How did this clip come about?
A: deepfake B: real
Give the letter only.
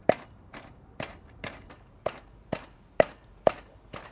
A